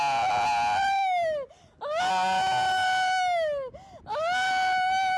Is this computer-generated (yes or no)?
no